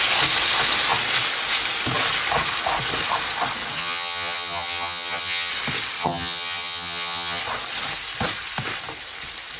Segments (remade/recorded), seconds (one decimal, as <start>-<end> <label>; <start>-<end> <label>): 0.0-3.8 recorded; 3.8-5.5 remade; 5.5-6.0 recorded; 6.0-7.4 remade; 7.4-9.6 recorded